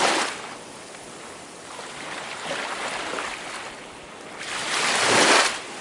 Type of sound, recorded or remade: recorded